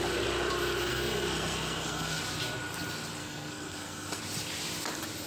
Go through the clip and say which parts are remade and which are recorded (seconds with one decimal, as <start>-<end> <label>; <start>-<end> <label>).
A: 0.0-0.9 recorded; 0.9-2.2 remade; 2.2-3.2 recorded; 3.2-4.2 remade; 4.2-5.3 recorded